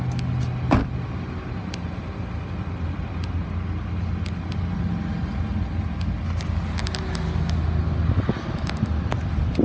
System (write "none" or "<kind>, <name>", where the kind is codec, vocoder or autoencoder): none